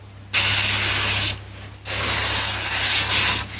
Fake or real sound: real